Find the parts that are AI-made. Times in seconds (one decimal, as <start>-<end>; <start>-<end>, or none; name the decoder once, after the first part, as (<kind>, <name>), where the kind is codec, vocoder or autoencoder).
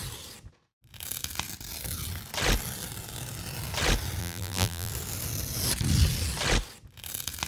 4.2-4.9 (vocoder, BigVGAN v2)